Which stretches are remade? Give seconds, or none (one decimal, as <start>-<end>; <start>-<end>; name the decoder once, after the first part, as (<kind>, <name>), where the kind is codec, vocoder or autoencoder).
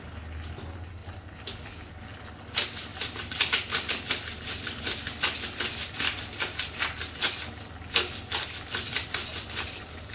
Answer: 2.9-5.2 (vocoder, BigVGAN v2)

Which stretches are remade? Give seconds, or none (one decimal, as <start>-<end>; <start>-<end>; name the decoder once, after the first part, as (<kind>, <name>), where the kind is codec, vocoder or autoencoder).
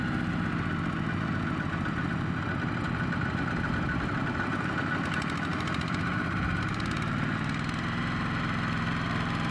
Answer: 5.5-9.5 (vocoder, BigVGAN v2)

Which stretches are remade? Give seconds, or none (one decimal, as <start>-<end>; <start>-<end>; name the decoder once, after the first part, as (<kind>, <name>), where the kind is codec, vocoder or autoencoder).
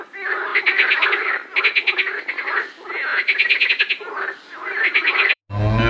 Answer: 0.5-1.6 (vocoder, BigVGAN v2); 3.1-3.7; 4.6-5.4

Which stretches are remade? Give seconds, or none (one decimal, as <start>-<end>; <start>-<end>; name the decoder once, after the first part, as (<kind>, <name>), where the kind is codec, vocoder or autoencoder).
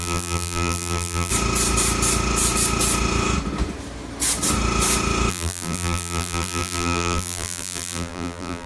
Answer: 0.0-1.3 (vocoder, BigVGAN v2); 5.3-8.7